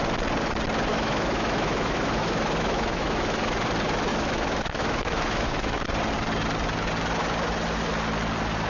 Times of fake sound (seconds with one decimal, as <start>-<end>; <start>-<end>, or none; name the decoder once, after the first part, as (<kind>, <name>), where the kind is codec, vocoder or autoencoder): 0.9-3.5 (autoencoder, DAC-VAE); 4.1-5.8